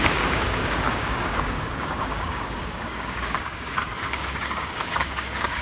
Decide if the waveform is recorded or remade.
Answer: remade